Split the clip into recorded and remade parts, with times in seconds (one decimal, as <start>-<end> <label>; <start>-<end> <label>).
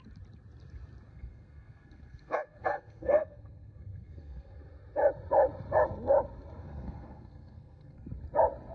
0.0-1.1 recorded; 1.1-4.6 remade; 4.6-6.6 recorded; 6.6-8.1 remade; 8.1-8.7 recorded